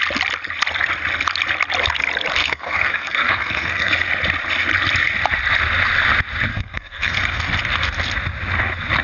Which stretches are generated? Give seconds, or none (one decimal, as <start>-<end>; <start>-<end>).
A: 2.4-3.9; 6.5-7.4